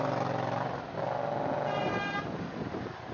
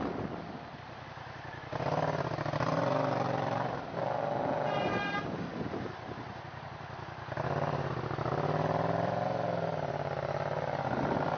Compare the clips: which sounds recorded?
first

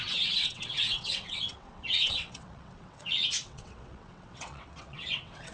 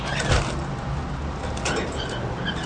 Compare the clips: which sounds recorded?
second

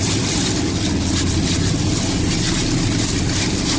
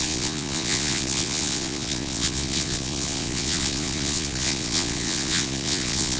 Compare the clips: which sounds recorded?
first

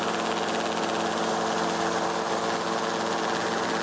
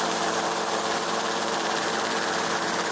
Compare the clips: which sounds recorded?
first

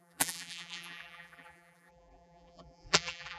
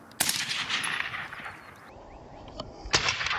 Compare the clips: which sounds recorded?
second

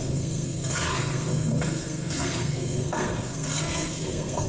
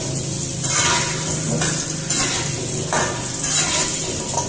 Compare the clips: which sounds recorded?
second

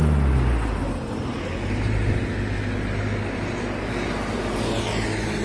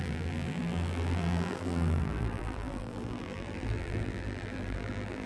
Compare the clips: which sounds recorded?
first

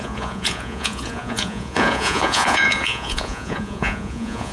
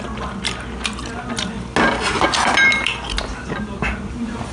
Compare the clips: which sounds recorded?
second